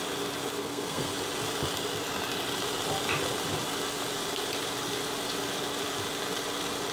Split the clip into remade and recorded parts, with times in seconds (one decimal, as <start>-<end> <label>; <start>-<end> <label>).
0.0-0.6 recorded; 0.6-1.1 remade; 1.1-6.9 recorded